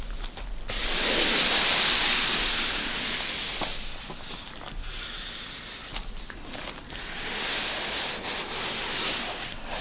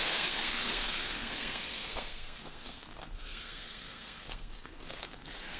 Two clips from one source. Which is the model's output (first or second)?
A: second